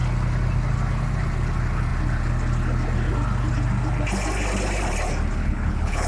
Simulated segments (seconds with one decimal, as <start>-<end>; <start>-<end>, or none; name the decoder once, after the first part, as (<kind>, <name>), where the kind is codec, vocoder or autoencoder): 5.4-6.1 (codec, HILCodec)

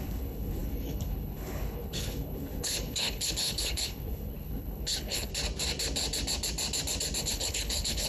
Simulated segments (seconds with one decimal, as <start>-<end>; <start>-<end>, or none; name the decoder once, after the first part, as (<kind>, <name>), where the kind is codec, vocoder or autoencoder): 0.0-5.3 (codec, HILCodec); 7.2-8.1

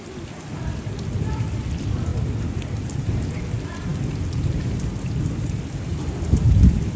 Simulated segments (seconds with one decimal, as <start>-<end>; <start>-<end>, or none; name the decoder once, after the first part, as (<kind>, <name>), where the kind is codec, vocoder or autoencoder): none

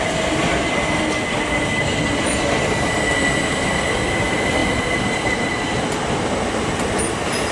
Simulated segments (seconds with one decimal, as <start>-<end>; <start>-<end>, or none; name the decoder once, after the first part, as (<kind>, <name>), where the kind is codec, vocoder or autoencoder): 4.6-5.9 (vocoder, BigVGAN v2)

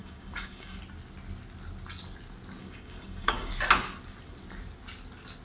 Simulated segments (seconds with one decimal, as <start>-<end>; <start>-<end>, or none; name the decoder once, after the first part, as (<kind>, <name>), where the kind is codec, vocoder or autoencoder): 0.0-0.8 (codec, DAC); 2.6-3.5

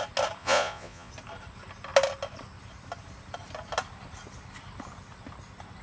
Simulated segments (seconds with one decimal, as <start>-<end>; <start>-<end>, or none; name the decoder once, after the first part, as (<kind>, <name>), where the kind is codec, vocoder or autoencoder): 0.4-1.1 (vocoder, Vocos)

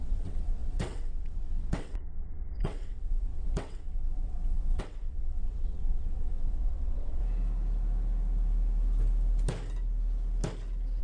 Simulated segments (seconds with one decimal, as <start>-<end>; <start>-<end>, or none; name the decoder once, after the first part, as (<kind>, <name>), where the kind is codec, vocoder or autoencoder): 0.0-7.2 (vocoder, WaveNeXt)